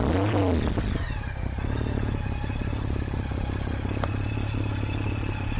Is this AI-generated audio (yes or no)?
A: no